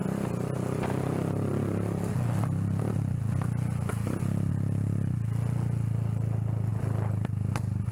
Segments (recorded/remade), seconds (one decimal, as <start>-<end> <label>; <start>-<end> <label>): 0.0-7.9 recorded